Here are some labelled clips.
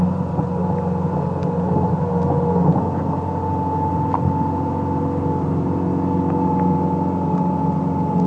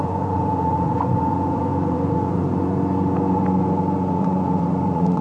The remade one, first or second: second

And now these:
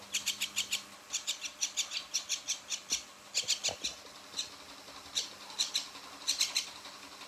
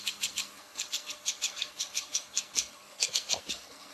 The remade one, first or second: second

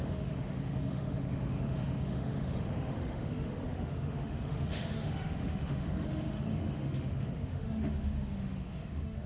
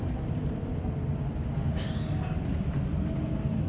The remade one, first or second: first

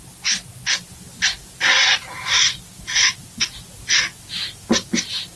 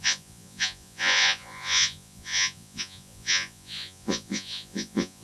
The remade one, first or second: second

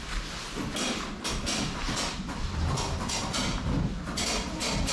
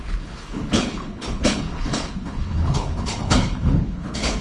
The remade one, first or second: second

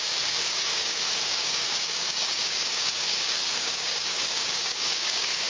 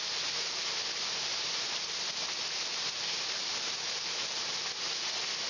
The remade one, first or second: first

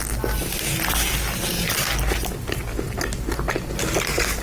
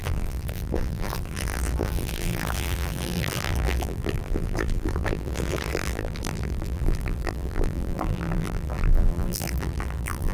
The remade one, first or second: second